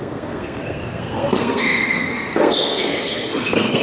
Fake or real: fake